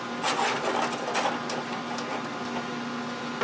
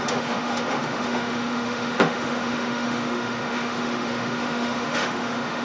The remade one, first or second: second